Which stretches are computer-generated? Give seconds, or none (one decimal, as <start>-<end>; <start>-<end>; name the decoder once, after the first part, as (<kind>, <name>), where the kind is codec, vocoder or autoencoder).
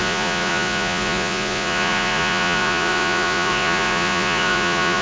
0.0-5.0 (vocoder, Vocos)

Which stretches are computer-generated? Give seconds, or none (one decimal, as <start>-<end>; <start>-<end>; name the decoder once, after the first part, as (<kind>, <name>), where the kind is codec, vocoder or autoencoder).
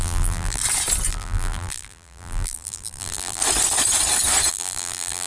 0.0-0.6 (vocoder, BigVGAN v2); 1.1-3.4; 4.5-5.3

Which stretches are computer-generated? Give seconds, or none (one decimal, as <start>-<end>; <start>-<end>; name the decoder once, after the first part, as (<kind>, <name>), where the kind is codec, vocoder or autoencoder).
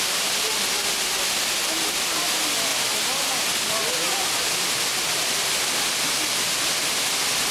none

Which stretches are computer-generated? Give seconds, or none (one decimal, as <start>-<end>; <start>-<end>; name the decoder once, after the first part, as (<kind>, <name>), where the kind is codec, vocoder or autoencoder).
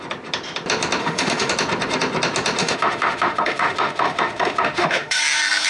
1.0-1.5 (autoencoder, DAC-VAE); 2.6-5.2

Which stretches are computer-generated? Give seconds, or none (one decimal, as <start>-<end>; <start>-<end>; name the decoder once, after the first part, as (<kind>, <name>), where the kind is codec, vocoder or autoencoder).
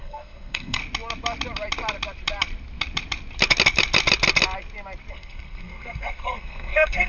0.0-0.8 (codec, SNAC); 5.1-7.1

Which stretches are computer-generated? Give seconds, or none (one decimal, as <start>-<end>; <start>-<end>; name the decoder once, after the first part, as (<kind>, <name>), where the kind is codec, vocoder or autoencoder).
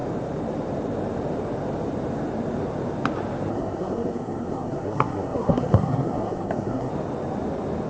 3.5-6.9 (codec, SNAC)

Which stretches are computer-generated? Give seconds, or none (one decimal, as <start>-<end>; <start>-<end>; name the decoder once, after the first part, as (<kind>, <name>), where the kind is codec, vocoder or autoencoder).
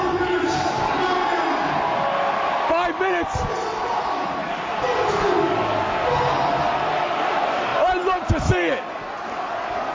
none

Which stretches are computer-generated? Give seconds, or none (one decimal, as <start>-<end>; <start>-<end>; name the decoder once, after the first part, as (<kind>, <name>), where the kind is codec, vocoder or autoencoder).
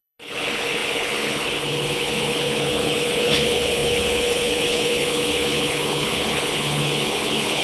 0.0-7.6 (codec, HILCodec)